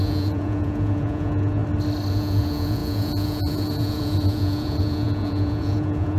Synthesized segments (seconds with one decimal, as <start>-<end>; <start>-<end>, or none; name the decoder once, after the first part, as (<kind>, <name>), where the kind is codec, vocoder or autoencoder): 0.0-1.6 (vocoder, Vocos); 2.1-6.2